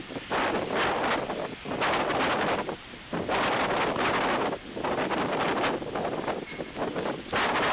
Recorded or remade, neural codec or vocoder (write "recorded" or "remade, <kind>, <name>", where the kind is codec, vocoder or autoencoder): recorded